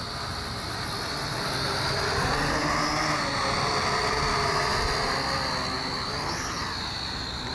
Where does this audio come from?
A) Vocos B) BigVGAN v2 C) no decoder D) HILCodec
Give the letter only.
C